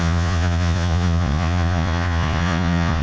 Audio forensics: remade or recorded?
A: remade